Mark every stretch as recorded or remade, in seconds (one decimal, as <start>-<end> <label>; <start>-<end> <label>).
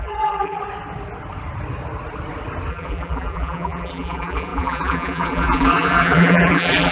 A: 0.0-0.6 remade; 0.6-2.7 recorded; 2.7-6.9 remade